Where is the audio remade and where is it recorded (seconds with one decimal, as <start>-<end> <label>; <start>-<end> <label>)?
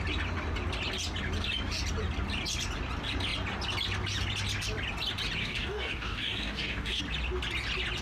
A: 0.0-5.4 recorded; 5.4-7.0 remade; 7.0-8.0 recorded